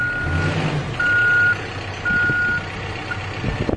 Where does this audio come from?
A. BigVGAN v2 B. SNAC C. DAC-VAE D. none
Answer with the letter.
D